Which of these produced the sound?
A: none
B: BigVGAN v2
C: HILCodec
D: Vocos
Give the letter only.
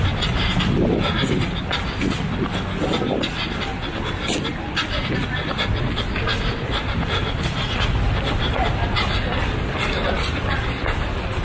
A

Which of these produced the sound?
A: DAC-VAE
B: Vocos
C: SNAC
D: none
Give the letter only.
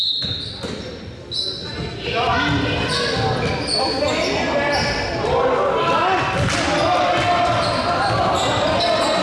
D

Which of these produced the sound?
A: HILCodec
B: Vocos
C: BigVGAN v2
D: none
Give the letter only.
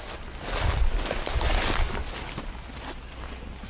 D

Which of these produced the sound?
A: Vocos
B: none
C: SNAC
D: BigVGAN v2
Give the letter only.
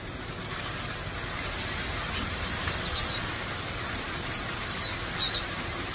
B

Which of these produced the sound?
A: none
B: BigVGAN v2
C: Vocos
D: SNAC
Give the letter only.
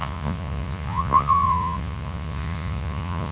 C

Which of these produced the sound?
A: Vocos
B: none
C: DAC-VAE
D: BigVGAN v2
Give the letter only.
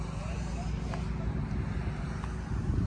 B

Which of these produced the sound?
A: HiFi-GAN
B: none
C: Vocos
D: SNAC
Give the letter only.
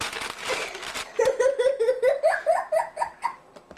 B